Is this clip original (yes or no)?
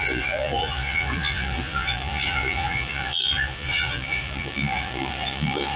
no